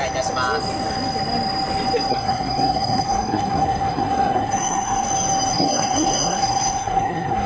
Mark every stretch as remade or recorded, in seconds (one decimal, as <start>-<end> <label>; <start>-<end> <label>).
0.0-2.1 recorded; 2.1-5.1 remade; 5.1-5.5 recorded; 5.5-7.5 remade